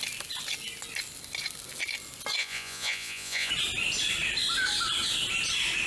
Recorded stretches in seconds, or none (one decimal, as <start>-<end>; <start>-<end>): 0.0-2.4; 3.5-5.9